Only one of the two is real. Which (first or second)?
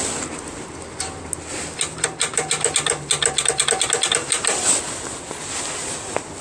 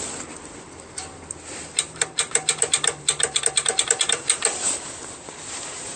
first